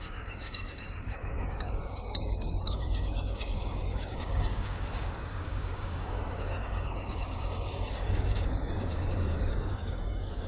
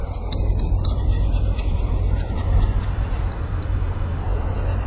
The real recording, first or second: second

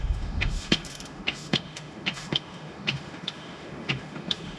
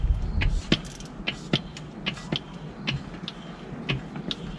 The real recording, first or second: second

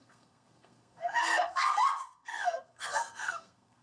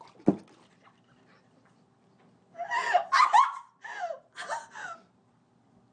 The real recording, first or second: second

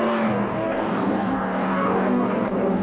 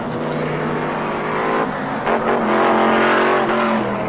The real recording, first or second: second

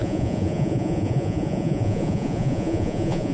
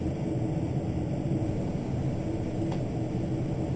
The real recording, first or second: second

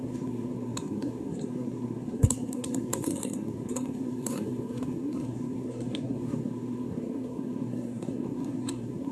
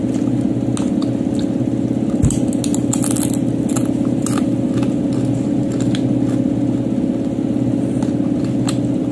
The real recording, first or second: second